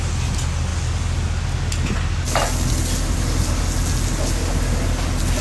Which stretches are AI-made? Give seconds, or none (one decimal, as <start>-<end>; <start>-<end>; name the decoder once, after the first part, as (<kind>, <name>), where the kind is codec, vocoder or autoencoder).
none